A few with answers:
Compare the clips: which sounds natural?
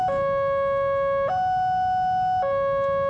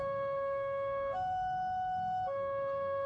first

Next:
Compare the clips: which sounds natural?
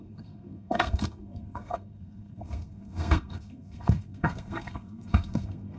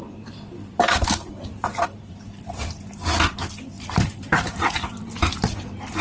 second